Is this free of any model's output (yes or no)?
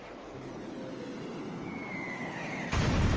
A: yes